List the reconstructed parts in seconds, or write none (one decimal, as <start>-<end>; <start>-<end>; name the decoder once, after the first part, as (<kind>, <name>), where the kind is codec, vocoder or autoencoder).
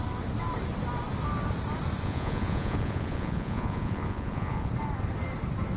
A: 2.0-4.7 (vocoder, Vocos)